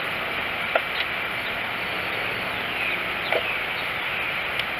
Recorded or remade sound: recorded